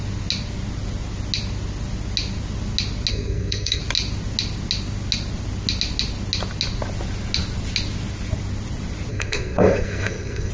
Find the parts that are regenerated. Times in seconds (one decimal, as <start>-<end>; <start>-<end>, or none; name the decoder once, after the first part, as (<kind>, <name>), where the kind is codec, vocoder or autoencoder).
3.1-3.8 (codec, SNAC); 9.1-10.5